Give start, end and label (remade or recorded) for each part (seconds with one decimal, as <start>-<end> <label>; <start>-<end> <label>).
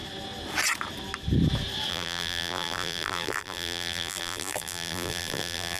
0.0-1.9 recorded; 1.9-5.8 remade